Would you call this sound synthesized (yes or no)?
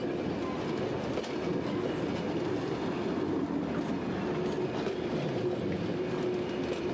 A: no